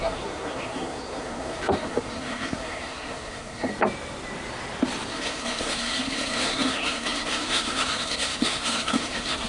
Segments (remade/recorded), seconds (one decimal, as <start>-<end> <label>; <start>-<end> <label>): 0.0-3.7 remade; 3.7-5.1 recorded; 5.1-9.5 remade